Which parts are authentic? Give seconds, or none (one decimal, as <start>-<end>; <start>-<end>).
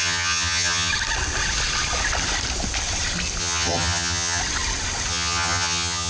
0.9-3.4; 4.4-5.1